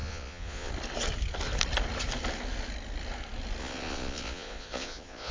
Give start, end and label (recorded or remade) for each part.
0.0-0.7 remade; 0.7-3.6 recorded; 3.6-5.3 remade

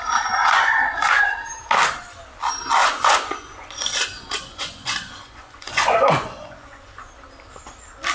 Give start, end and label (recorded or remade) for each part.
0.0-0.4 recorded; 0.4-1.2 remade; 1.2-2.8 recorded; 2.8-7.1 remade; 7.1-8.1 recorded

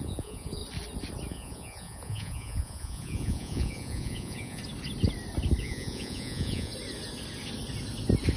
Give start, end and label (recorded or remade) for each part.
0.0-0.6 remade; 0.6-1.3 recorded; 1.3-4.6 remade; 4.6-5.6 recorded; 5.6-6.7 remade; 6.7-8.4 recorded

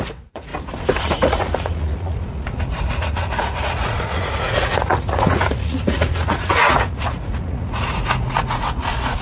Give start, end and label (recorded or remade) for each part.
0.0-0.5 remade; 0.5-1.0 recorded; 1.0-9.2 remade

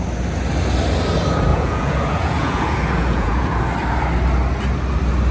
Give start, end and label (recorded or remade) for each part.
0.0-1.5 recorded; 1.5-3.6 remade; 3.6-5.3 recorded

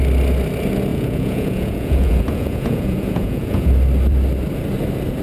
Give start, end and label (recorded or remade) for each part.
0.0-0.9 recorded; 0.9-3.7 remade; 3.7-5.2 recorded